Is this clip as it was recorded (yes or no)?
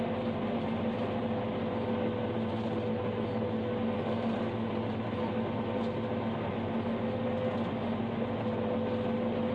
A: yes